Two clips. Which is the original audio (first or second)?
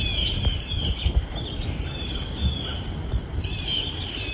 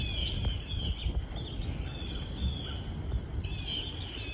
second